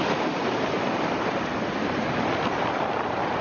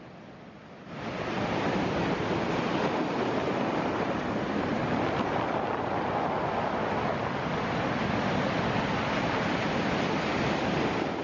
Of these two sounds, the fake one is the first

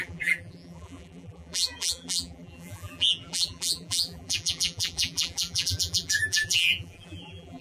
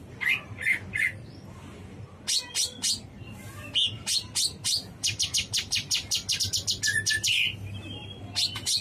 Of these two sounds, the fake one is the first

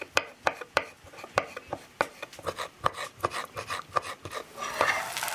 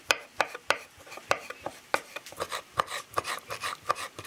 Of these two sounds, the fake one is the second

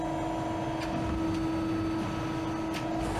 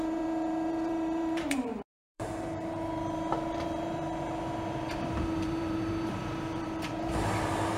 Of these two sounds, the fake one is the second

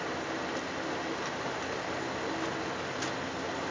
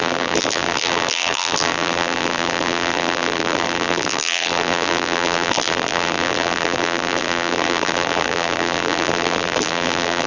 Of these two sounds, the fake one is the second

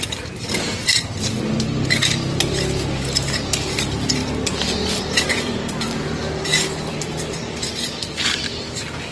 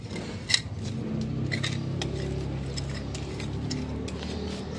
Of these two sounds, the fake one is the first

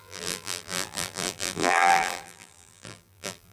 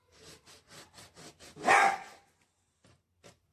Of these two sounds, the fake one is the first